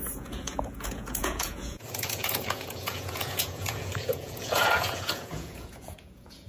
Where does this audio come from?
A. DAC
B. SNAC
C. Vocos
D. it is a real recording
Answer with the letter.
C